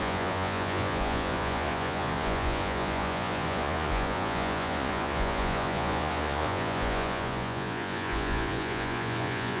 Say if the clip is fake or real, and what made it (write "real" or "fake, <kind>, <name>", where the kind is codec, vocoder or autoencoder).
fake, vocoder, Vocos